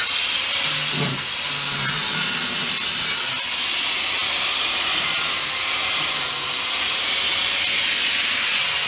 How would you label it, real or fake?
real